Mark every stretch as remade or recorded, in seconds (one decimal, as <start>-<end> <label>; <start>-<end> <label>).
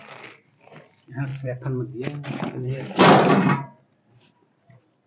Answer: 0.0-5.1 recorded